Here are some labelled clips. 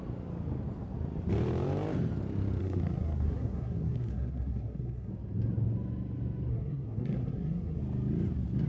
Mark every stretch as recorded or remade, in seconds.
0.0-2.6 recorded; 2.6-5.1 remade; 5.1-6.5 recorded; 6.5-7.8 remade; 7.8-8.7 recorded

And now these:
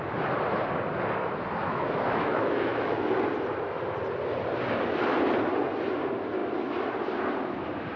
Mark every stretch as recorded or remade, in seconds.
0.0-1.6 recorded; 1.6-3.1 remade; 3.1-8.0 recorded

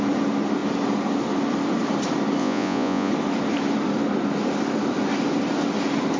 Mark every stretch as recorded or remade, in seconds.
0.0-2.4 recorded; 2.4-3.1 remade; 3.1-6.2 recorded

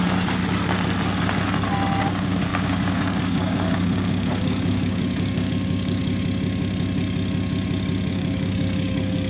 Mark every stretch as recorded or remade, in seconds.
0.0-0.4 remade; 0.4-2.0 recorded; 2.0-6.0 remade; 6.0-8.1 recorded; 8.1-9.3 remade